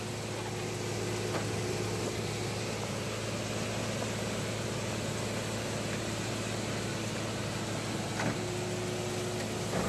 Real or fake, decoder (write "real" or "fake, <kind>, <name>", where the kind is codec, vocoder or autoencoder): real